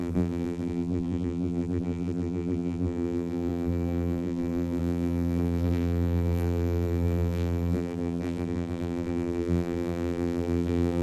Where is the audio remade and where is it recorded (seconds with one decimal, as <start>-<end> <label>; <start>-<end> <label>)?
0.0-11.0 remade